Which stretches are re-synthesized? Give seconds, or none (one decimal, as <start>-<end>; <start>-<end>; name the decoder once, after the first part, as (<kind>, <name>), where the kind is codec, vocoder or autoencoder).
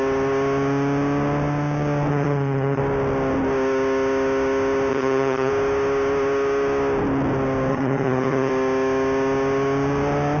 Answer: 2.1-2.8 (vocoder, HiFi-GAN); 4.9-5.5; 7.7-8.5